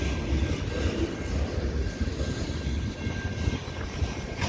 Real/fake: real